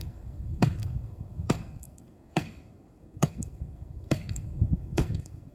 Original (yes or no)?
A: no